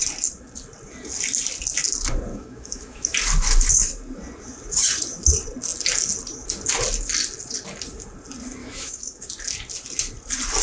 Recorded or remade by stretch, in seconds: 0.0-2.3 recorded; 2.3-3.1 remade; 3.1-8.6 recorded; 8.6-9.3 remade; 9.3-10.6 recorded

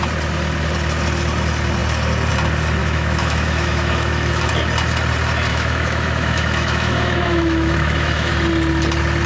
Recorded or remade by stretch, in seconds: 0.0-2.8 recorded; 2.8-4.5 remade; 4.5-5.5 recorded; 5.5-8.3 remade; 8.3-9.3 recorded

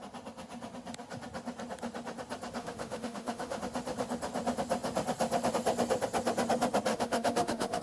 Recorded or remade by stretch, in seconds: 0.0-2.6 recorded; 2.6-3.6 remade; 3.6-6.9 recorded; 6.9-7.8 remade

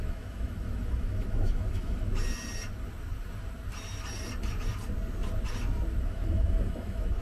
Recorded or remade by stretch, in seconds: 0.0-2.1 remade; 2.1-6.0 recorded; 6.0-7.2 remade

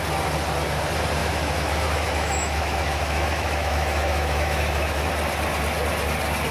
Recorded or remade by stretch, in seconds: 0.0-1.2 recorded; 1.2-5.1 remade; 5.1-6.5 recorded

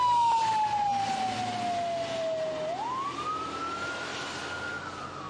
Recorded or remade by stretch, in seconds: 0.0-0.4 remade; 0.4-3.6 recorded; 3.6-4.1 remade; 4.1-5.3 recorded

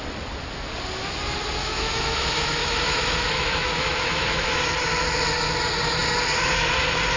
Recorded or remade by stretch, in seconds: 0.0-1.6 recorded; 1.6-4.6 remade; 4.6-7.2 recorded